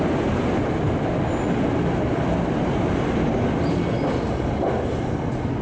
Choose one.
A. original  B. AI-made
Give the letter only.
A